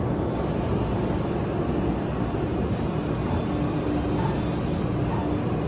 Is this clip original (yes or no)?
yes